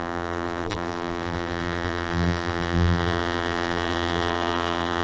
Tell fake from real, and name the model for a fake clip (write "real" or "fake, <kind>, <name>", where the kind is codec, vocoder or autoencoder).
fake, vocoder, BigVGAN v2